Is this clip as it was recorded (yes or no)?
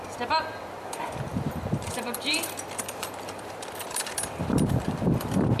no